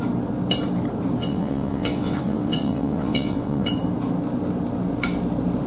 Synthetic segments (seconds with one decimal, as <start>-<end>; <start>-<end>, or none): 1.2-3.7